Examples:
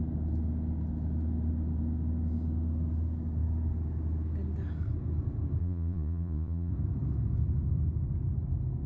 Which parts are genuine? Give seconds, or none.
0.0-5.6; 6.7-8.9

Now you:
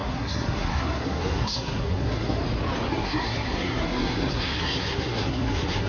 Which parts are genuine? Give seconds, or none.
2.4-2.9